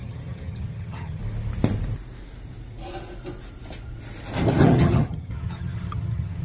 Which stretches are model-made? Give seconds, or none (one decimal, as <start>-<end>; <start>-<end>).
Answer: 0.0-1.2; 4.6-6.4